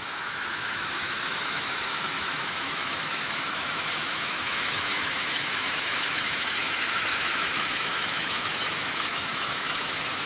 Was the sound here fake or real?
fake